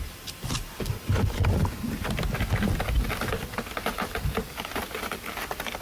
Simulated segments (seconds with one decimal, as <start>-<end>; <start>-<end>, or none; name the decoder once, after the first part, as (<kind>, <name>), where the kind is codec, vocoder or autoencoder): 0.0-1.6 (vocoder, BigVGAN v2); 3.8-5.8